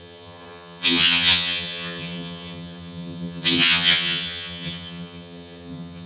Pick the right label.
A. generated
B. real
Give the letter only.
A